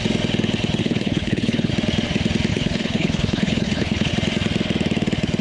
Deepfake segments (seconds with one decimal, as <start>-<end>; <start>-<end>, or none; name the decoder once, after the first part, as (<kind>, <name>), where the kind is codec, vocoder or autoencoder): 0.8-1.7 (codec, HILCodec); 2.5-4.1